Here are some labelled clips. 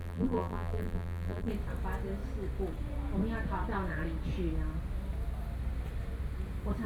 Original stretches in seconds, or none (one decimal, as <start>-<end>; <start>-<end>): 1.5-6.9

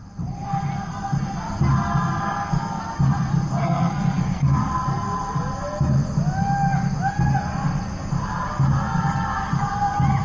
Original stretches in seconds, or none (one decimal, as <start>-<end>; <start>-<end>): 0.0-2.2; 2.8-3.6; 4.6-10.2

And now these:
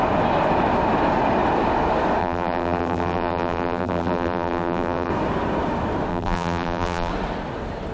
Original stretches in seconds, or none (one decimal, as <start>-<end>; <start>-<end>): 0.0-2.2; 5.1-6.1; 7.1-7.9